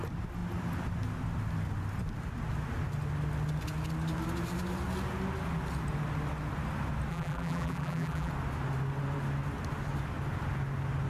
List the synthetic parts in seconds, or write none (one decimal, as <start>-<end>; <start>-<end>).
7.1-8.3